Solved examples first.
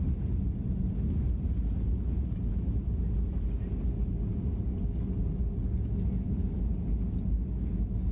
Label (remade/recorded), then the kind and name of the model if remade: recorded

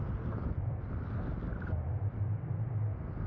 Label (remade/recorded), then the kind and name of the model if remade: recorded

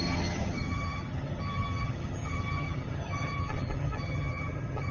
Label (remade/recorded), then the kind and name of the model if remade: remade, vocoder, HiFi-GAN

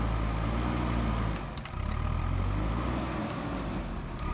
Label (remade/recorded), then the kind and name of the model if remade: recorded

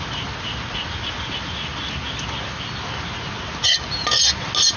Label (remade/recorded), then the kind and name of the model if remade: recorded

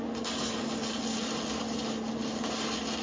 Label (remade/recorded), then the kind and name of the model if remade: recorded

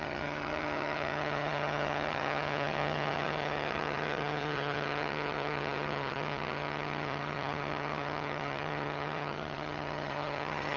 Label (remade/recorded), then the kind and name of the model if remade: remade, vocoder, HiFi-GAN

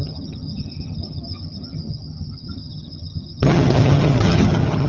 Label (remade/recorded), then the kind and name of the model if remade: remade, vocoder, HiFi-GAN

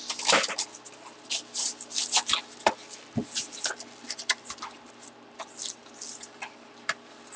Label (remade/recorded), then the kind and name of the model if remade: recorded